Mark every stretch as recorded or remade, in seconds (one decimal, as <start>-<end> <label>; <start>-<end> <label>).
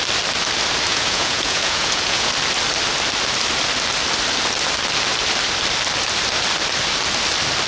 0.0-0.9 recorded; 0.9-2.3 remade; 2.3-7.7 recorded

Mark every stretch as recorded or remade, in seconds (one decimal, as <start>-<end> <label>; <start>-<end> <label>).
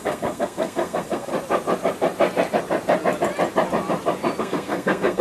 0.0-1.3 remade; 1.3-4.4 recorded; 4.4-5.2 remade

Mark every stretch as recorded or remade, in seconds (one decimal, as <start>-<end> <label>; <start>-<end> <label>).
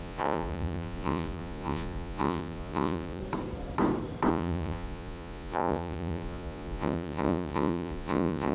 0.0-3.2 remade; 3.2-4.3 recorded; 4.3-8.5 remade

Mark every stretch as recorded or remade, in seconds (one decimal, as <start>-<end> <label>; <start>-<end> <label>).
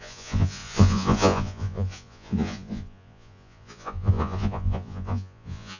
0.0-5.8 remade